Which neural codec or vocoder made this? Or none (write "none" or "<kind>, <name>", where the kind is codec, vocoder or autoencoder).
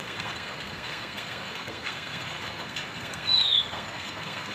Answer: codec, SNAC